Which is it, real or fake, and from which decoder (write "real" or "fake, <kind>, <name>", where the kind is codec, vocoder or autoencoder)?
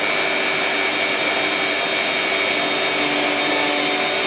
real